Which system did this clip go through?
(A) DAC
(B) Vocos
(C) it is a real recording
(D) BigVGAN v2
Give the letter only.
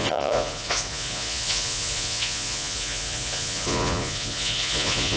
B